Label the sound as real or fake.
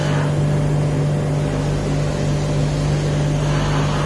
real